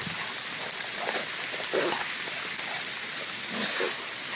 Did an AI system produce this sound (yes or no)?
no